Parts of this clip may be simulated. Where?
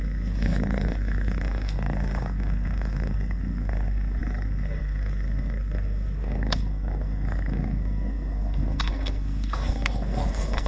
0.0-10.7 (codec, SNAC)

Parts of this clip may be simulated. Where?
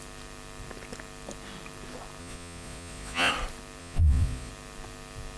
2.2-3.3 (vocoder, Vocos); 3.8-4.5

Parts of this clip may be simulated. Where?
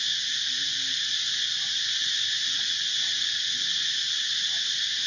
1.1-4.0 (vocoder, Vocos)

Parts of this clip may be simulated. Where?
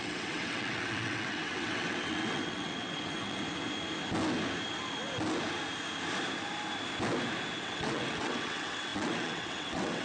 0.0-3.4 (vocoder, WaveNeXt); 7.6-10.0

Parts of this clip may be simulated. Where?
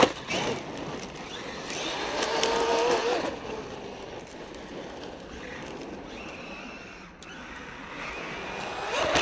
none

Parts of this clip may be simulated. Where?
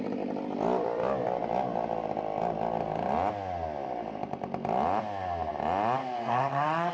6.0-6.9 (codec, SNAC)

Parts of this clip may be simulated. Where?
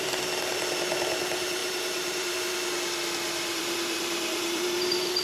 1.6-2.5 (vocoder, BigVGAN v2); 3.5-5.2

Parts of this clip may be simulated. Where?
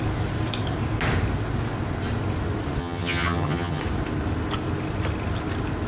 2.8-3.8 (vocoder, HiFi-GAN)